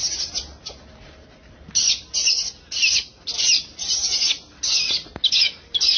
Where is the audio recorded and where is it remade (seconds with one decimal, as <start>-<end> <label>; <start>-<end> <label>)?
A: 0.0-6.0 recorded